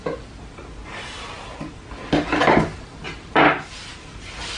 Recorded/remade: recorded